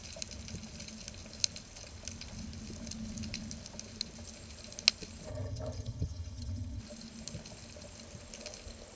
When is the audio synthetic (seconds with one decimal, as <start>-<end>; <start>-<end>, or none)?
5.3-6.8